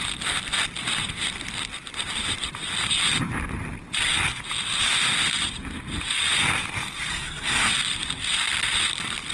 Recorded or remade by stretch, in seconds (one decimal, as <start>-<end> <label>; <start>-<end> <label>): 0.0-7.1 recorded; 7.1-7.7 remade; 7.7-9.3 recorded